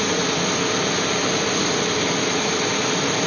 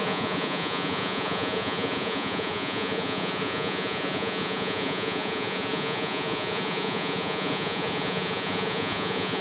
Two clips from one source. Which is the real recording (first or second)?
first